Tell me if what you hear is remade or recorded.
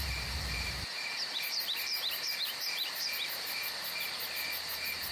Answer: remade